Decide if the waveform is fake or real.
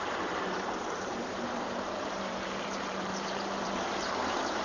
fake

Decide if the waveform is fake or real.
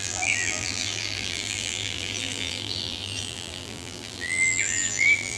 fake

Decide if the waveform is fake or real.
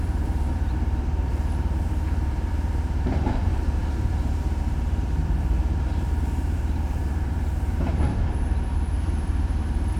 fake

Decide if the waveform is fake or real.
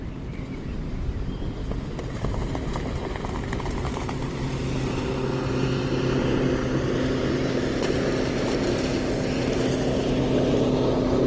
real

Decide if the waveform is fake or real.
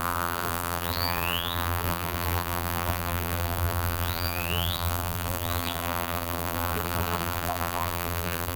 fake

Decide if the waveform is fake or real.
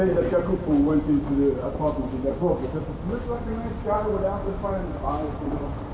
real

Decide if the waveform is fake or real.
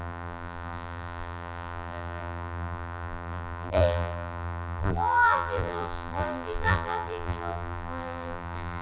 fake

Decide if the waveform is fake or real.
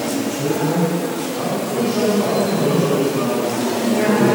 real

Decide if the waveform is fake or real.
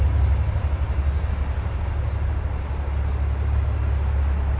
real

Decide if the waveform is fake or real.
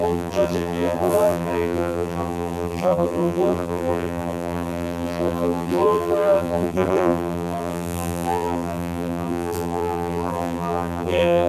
fake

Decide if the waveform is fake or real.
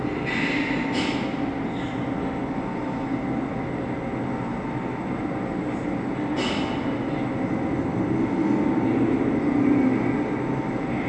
real